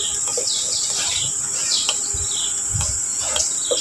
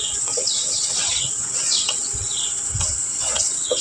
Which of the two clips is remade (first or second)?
second